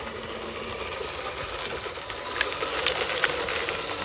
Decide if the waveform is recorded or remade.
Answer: recorded